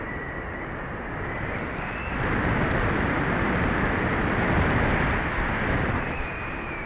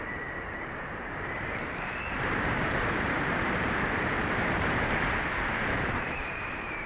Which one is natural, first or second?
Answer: first